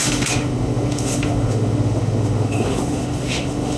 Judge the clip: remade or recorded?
remade